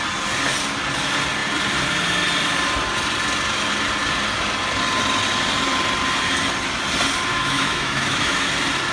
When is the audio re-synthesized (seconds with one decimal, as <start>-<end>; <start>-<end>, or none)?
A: 7.3-8.5

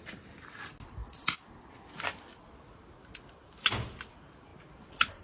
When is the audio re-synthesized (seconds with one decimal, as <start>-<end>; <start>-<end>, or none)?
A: none

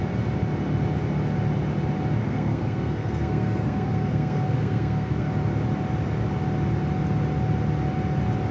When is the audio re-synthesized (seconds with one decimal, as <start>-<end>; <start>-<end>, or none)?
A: 2.2-5.3

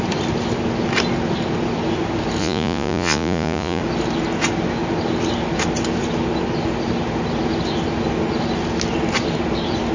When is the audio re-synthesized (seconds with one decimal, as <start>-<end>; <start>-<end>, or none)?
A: 2.4-3.8

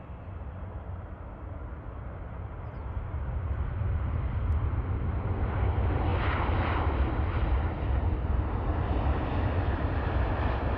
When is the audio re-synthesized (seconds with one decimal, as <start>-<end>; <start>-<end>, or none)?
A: none

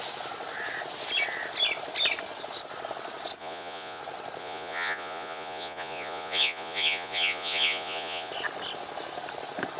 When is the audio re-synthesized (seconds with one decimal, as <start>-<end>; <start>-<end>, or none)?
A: 3.4-4.0; 4.4-8.3

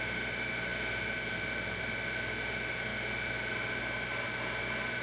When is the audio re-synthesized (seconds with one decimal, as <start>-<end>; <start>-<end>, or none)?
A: none